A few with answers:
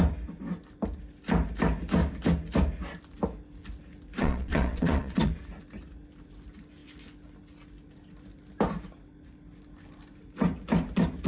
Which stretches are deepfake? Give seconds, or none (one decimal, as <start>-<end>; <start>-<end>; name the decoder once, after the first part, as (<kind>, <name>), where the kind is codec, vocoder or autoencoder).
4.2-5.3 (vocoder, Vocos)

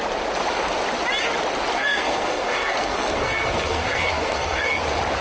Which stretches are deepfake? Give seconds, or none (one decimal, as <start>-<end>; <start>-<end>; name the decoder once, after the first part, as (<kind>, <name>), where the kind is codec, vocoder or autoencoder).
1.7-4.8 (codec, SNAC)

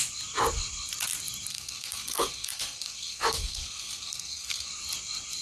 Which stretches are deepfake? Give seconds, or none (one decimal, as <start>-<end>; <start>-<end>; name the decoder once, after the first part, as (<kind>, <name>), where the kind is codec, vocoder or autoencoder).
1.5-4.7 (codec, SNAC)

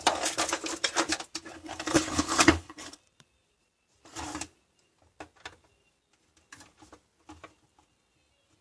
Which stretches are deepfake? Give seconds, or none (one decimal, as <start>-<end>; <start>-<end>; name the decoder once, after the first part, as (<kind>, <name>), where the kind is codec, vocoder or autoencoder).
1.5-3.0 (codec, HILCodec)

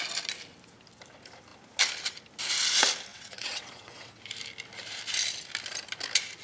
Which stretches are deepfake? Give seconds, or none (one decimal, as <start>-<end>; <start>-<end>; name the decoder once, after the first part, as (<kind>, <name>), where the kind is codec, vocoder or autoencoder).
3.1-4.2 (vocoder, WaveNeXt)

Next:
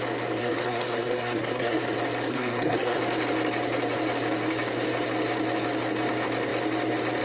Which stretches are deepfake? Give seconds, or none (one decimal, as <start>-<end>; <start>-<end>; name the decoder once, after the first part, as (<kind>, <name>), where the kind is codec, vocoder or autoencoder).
0.4-1.8 (codec, SNAC); 2.3-3.0